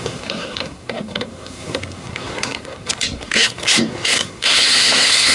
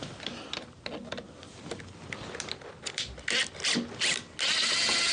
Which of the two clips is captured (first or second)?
second